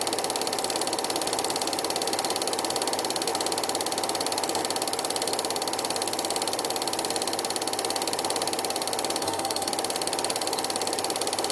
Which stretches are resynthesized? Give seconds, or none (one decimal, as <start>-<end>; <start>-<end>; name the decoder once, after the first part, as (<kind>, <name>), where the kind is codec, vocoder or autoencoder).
9.2-9.7 (codec, SNAC)